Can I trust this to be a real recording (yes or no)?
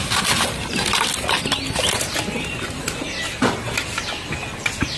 yes